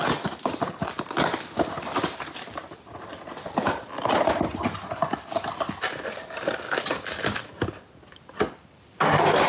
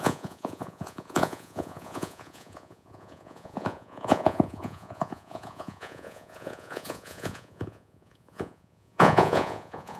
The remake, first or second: second